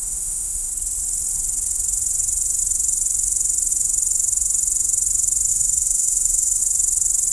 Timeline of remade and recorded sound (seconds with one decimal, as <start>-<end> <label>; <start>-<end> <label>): 0.0-0.7 remade; 0.7-5.5 recorded; 5.5-6.6 remade; 6.6-7.3 recorded